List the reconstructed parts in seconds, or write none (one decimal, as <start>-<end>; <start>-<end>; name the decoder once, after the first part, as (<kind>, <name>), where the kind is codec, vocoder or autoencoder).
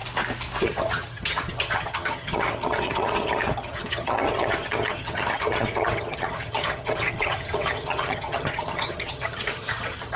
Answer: 0.6-10.2 (vocoder, HiFi-GAN)